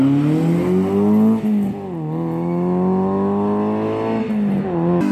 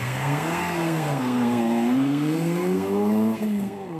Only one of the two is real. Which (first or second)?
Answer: first